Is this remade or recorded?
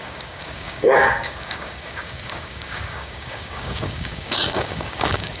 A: remade